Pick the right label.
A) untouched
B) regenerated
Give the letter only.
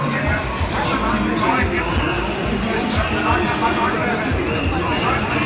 A